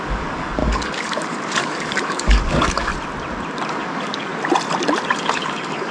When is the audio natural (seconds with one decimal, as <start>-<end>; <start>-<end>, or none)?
2.9-3.7; 4.3-5.1